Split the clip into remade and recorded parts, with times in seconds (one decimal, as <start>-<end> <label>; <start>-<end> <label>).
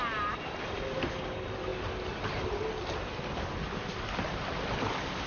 0.0-5.3 recorded